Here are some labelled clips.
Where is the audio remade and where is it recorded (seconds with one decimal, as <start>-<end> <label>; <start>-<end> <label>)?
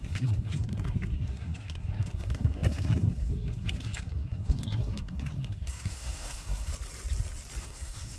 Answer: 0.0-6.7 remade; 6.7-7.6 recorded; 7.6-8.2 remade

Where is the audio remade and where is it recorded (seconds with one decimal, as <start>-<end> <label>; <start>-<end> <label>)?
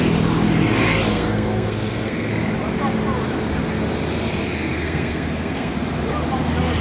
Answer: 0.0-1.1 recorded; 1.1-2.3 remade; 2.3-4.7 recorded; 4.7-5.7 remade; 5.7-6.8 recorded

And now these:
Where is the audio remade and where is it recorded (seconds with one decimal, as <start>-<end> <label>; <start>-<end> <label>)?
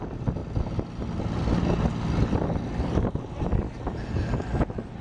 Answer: 0.0-5.0 recorded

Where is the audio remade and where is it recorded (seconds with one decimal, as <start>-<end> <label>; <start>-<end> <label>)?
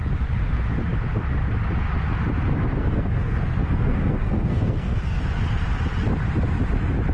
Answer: 0.0-2.5 recorded; 2.5-5.2 remade; 5.2-7.1 recorded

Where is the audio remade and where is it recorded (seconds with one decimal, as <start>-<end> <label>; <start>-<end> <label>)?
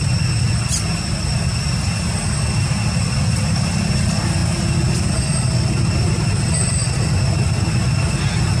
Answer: 0.0-8.6 recorded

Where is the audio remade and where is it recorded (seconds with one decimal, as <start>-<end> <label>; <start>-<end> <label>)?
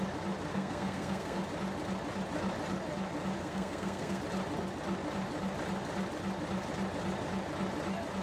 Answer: 0.0-0.5 recorded; 0.5-1.4 remade; 1.4-3.4 recorded; 3.4-4.2 remade; 4.2-8.2 recorded